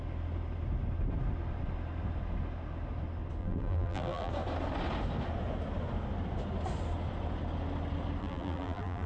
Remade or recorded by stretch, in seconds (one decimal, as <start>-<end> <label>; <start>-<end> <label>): 0.0-3.4 recorded; 3.4-4.3 remade; 4.3-8.2 recorded; 8.2-9.1 remade